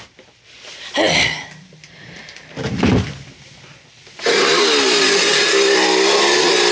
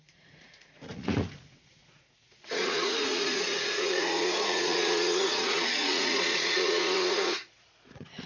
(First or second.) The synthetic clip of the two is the second